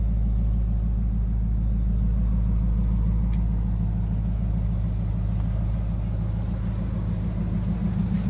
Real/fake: real